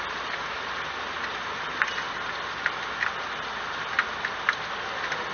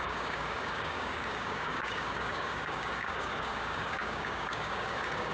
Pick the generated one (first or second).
second